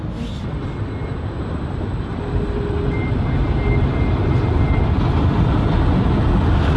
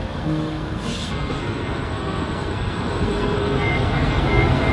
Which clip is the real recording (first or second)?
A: first